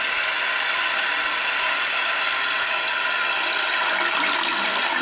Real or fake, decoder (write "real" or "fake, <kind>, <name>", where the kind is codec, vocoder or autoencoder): real